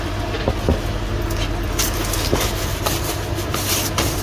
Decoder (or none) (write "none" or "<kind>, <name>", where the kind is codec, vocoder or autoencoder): none